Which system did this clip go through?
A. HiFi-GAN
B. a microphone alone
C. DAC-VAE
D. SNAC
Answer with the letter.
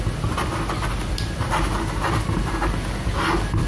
B